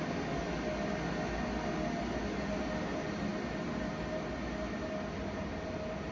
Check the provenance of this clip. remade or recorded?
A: recorded